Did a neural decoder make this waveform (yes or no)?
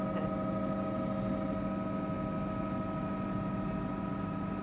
no